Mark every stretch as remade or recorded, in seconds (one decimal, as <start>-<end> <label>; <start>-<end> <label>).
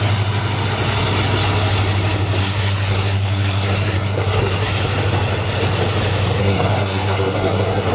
0.0-2.4 recorded; 2.4-4.7 remade; 4.7-6.4 recorded; 6.4-7.9 remade